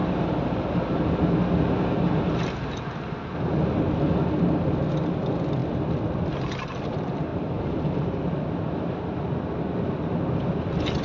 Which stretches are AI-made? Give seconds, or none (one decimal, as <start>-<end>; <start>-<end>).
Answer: 7.3-8.2